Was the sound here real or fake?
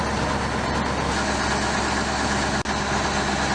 real